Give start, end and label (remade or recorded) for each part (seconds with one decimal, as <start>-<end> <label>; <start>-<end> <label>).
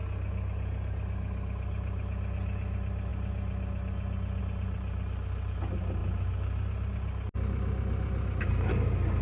0.0-9.2 recorded